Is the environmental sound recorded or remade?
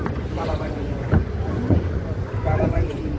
remade